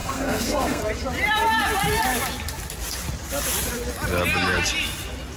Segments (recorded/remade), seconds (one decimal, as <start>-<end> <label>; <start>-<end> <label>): 0.0-0.8 remade; 0.8-5.4 recorded

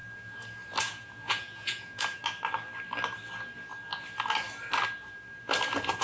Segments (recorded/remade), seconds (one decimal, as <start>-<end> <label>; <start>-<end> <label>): 0.0-0.8 recorded; 0.8-2.2 remade; 2.2-6.0 recorded

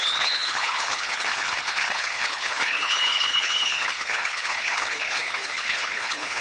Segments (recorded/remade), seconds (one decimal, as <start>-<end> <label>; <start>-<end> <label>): 0.0-6.4 remade

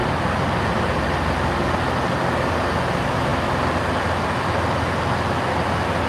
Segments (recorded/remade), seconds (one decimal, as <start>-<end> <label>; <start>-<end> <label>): 0.0-6.1 recorded

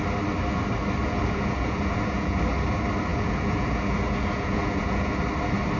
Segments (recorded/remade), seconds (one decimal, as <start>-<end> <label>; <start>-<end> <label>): 0.0-1.0 recorded; 1.0-2.4 remade; 2.4-3.1 recorded; 3.1-5.1 remade; 5.1-5.8 recorded